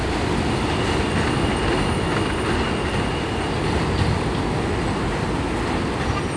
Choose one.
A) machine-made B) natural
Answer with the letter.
B